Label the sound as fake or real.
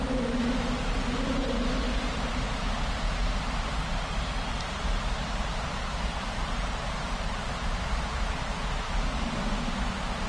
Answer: fake